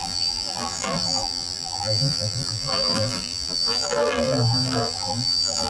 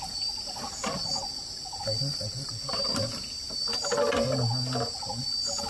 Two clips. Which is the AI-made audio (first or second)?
first